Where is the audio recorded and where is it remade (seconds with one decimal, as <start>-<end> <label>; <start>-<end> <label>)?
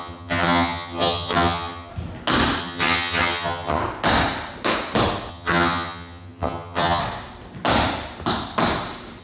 0.0-1.9 remade; 1.9-2.6 recorded; 2.6-3.8 remade; 3.8-5.3 recorded; 5.3-7.0 remade; 7.0-9.2 recorded